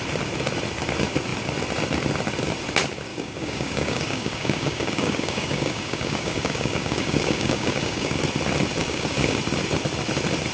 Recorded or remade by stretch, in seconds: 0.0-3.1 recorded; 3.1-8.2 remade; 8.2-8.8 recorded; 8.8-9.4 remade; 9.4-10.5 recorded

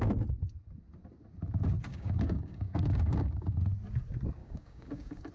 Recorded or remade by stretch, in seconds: 0.0-1.9 recorded; 1.9-3.6 remade; 3.6-4.4 recorded; 4.4-5.3 remade

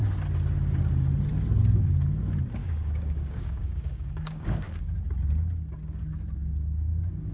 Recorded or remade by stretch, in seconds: 0.0-2.6 recorded; 2.6-4.8 remade; 4.8-7.3 recorded

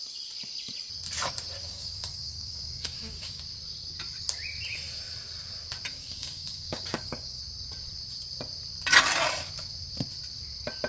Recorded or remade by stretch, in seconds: 0.0-1.6 recorded; 1.6-3.4 remade; 3.4-5.9 recorded; 5.9-7.4 remade; 7.4-10.9 recorded

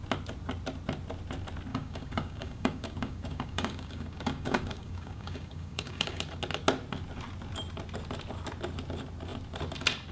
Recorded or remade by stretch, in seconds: 0.0-1.7 recorded; 1.7-6.2 remade; 6.2-10.1 recorded

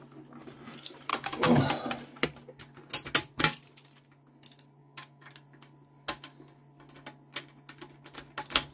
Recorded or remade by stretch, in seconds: 0.0-1.1 recorded; 1.1-1.6 remade; 1.6-4.8 recorded; 4.8-5.3 remade; 5.3-8.7 recorded